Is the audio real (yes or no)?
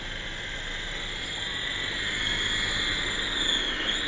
yes